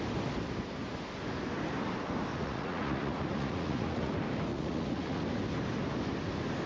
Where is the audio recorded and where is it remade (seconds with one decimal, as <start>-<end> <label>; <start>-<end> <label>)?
0.0-2.3 recorded; 2.3-4.1 remade; 4.1-4.5 recorded; 4.5-5.2 remade; 5.2-6.7 recorded